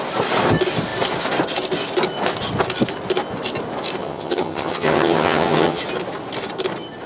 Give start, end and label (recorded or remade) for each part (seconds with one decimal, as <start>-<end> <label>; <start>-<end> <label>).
0.0-4.0 recorded; 4.0-5.8 remade; 5.8-7.1 recorded